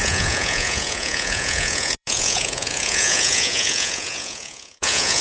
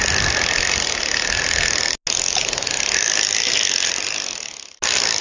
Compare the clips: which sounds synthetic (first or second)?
first